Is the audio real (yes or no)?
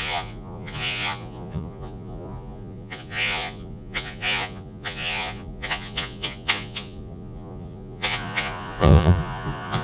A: no